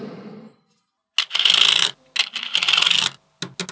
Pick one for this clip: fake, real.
real